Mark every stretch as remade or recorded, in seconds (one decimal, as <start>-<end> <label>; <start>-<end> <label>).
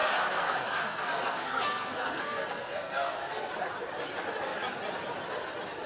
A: 0.0-3.5 remade; 3.5-5.9 recorded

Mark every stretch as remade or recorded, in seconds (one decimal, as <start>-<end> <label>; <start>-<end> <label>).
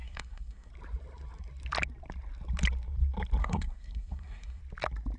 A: 0.0-0.7 remade; 0.7-3.4 recorded; 3.4-4.6 remade; 4.6-5.2 recorded